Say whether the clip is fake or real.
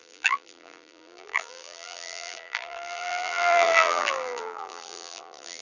fake